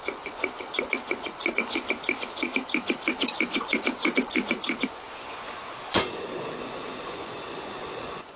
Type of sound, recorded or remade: remade